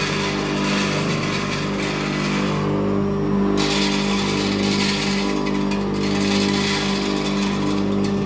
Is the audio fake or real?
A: real